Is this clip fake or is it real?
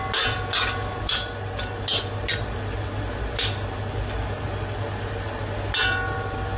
real